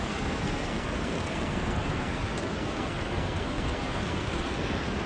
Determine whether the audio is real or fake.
fake